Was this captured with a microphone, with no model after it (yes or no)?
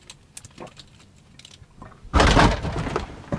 yes